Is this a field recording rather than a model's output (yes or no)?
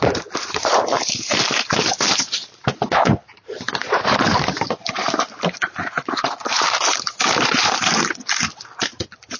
no